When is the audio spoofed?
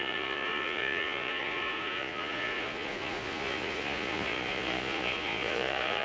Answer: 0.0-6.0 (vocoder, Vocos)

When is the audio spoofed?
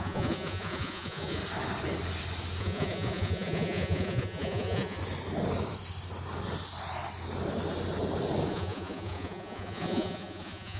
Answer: 0.0-1.4 (vocoder, Vocos); 2.6-5.0; 8.5-10.8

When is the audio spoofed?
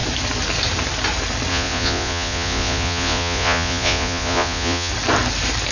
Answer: 1.5-4.9 (vocoder, Vocos)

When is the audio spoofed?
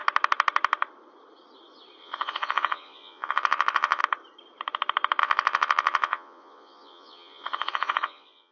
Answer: 2.0-4.0 (vocoder, Vocos); 5.2-8.5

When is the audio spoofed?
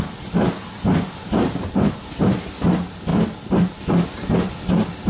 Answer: none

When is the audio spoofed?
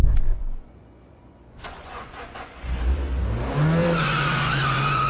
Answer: 0.0-2.8 (vocoder, Vocos); 3.8-5.1